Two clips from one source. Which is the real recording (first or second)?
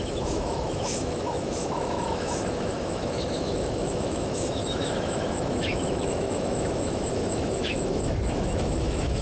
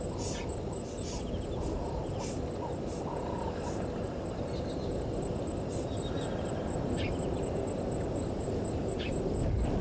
second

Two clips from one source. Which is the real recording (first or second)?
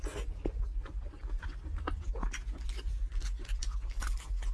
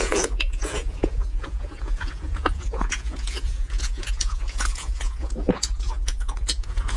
first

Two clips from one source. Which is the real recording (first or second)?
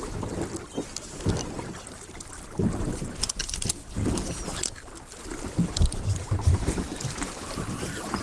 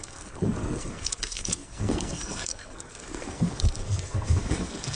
first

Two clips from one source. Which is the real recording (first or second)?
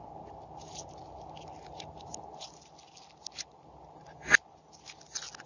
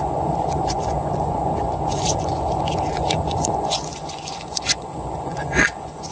first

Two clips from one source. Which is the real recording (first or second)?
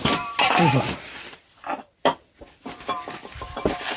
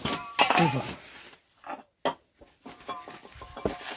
second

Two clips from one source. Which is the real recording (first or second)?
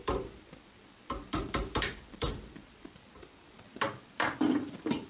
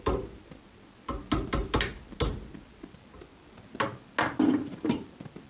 second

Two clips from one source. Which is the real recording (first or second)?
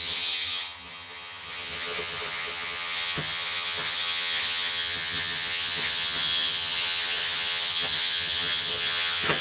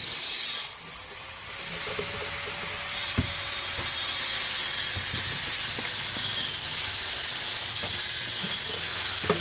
second